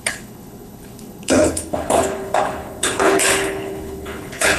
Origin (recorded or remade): remade